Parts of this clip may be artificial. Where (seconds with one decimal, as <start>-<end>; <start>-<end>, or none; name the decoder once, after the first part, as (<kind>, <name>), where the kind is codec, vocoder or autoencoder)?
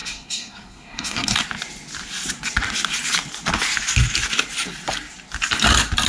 0.0-1.4 (codec, SNAC)